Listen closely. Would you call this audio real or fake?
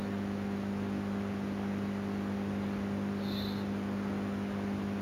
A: real